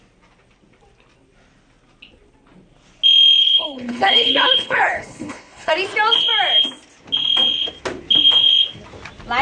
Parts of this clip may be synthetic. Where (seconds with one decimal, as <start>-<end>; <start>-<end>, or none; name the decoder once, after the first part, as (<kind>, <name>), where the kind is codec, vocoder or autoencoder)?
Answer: 3.4-5.7 (codec, HILCodec)